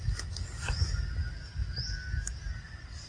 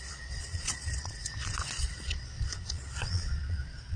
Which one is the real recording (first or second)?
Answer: first